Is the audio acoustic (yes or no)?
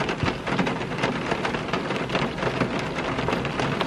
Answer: yes